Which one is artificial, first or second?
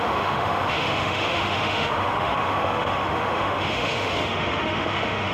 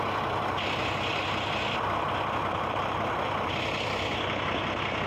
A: first